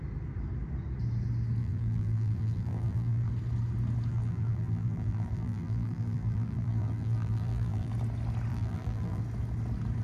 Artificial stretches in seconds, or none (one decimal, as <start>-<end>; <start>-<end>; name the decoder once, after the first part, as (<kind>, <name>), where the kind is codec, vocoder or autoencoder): 1.6-3.3 (vocoder, BigVGAN v2); 4.1-7.9; 8.5-9.2